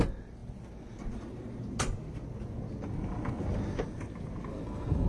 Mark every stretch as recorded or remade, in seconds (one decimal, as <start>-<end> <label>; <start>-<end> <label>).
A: 0.0-4.5 recorded; 4.5-5.1 remade